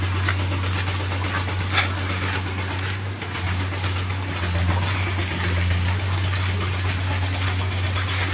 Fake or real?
real